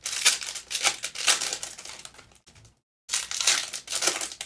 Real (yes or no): yes